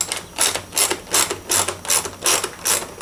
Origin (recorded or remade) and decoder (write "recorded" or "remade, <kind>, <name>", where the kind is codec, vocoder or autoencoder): recorded